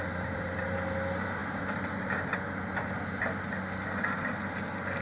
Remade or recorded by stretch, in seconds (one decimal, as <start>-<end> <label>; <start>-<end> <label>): 0.0-5.0 recorded